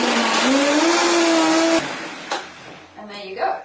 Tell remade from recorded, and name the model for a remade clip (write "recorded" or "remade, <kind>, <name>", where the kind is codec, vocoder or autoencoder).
recorded